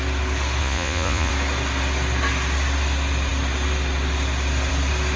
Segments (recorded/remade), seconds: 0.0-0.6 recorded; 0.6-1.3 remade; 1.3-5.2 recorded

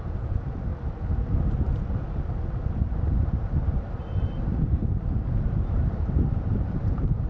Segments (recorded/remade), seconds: 0.0-0.7 remade; 0.7-2.7 recorded; 2.7-4.8 remade; 4.8-5.7 recorded; 5.7-7.3 remade

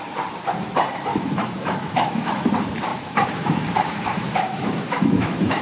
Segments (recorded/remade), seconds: 0.0-1.1 recorded; 1.1-2.5 remade; 2.5-2.9 recorded; 2.9-5.6 remade

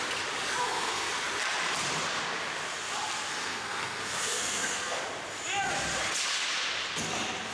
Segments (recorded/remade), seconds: 0.0-0.6 recorded; 0.6-1.1 remade; 1.1-3.4 recorded; 3.4-5.0 remade; 5.0-7.5 recorded

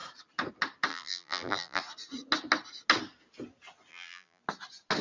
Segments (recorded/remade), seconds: 0.0-0.9 recorded; 0.9-1.8 remade; 1.8-3.9 recorded; 3.9-4.4 remade; 4.4-5.0 recorded

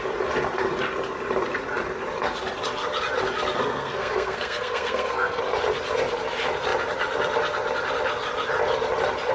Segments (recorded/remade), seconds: 0.0-3.6 recorded; 3.6-5.4 remade; 5.4-9.3 recorded

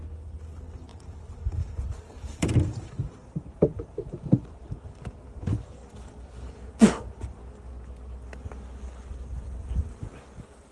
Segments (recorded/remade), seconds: 0.0-0.9 recorded; 0.9-5.1 remade; 5.1-10.7 recorded

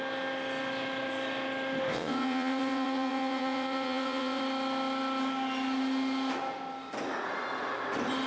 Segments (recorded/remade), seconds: 0.0-1.9 recorded; 1.9-4.4 remade; 4.4-8.3 recorded